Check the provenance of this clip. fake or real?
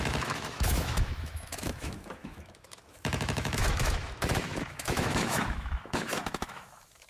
fake